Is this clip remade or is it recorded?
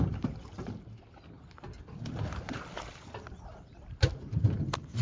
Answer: recorded